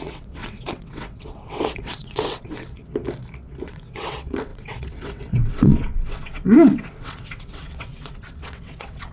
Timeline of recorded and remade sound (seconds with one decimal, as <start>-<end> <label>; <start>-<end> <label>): 0.0-2.8 remade; 2.8-3.6 recorded; 3.6-9.1 remade